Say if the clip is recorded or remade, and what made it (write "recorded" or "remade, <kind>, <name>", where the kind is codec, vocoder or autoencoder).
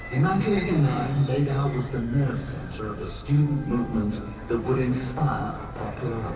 remade, codec, DAC